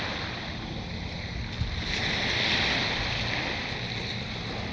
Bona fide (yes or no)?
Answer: yes